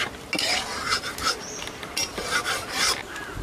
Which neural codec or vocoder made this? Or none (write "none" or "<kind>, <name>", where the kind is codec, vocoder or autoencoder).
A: none